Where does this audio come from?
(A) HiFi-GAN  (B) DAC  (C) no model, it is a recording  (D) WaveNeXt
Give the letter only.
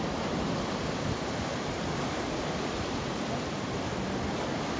C